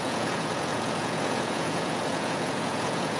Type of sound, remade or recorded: remade